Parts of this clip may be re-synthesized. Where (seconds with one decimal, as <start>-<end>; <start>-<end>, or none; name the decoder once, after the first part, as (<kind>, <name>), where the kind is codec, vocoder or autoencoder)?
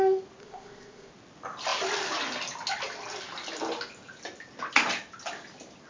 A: 0.4-1.1 (codec, ZipCodec)